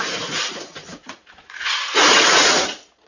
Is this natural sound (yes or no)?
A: no